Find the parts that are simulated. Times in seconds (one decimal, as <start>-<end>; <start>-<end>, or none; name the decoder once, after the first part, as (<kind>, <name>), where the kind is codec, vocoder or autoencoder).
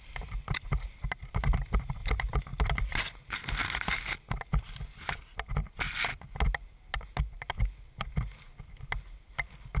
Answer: none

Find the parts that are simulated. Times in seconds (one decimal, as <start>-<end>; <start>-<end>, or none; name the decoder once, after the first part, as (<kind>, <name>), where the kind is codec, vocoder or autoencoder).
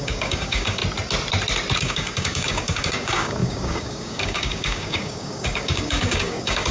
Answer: 0.0-0.8 (codec, DAC); 1.8-6.7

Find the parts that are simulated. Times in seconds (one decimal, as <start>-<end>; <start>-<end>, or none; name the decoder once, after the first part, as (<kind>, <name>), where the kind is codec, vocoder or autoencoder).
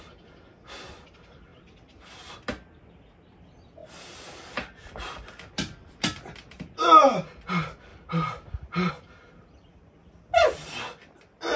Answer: 7.9-8.9 (vocoder, BigVGAN v2)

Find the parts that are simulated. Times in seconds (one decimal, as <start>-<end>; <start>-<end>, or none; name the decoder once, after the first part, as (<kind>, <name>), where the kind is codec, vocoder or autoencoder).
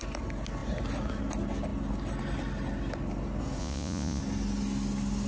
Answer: 3.6-4.2 (vocoder, Vocos)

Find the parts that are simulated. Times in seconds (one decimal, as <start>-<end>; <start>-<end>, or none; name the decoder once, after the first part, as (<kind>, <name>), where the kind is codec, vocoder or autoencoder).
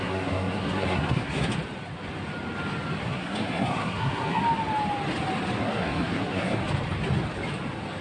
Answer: 0.0-1.5 (codec, SNAC); 3.0-4.4; 5.6-6.6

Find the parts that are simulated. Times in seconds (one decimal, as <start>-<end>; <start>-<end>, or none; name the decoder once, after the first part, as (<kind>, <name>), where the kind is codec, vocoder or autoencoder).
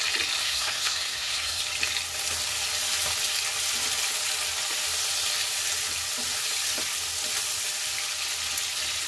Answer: 0.4-1.6 (codec, SNAC)